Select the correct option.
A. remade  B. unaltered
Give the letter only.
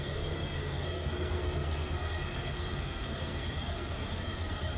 A